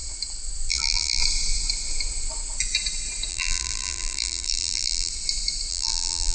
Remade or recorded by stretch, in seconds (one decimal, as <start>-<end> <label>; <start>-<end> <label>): 0.0-0.7 recorded; 0.7-1.2 remade; 1.2-3.3 recorded; 3.3-5.1 remade; 5.1-5.7 recorded; 5.7-6.3 remade